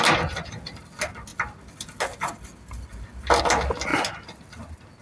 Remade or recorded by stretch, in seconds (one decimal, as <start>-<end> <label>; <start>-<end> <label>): 0.0-5.0 recorded